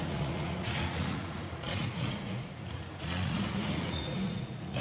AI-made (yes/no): yes